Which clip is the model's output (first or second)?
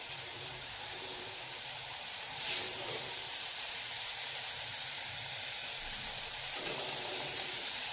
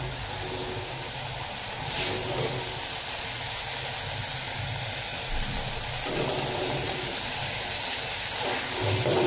first